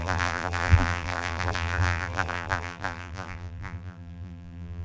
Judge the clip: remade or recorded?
remade